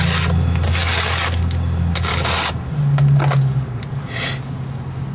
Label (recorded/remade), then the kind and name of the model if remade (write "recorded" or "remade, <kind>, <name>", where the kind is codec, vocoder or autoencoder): recorded